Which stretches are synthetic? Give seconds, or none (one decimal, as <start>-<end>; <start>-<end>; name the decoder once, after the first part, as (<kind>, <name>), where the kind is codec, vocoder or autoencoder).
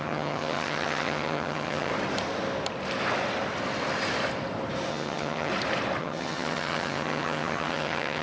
0.0-1.9 (vocoder, HiFi-GAN); 4.9-5.5; 6.0-8.2